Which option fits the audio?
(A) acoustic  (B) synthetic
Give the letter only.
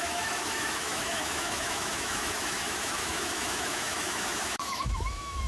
B